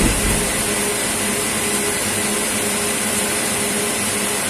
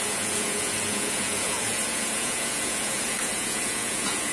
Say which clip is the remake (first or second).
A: second